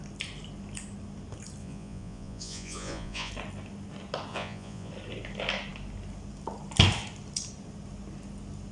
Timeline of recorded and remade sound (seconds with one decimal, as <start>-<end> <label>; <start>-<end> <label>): 0.0-1.6 recorded; 1.6-3.3 remade; 3.3-4.3 recorded; 4.3-4.9 remade; 4.9-8.7 recorded